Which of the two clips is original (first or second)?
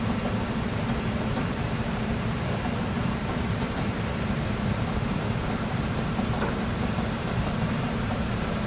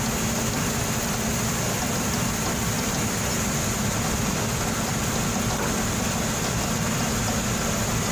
second